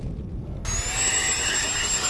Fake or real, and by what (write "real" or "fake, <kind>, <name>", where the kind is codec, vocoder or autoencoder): real